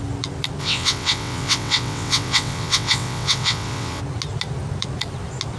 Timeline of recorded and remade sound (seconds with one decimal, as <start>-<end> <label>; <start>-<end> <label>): 0.0-0.6 recorded; 0.6-4.0 remade; 4.0-5.6 recorded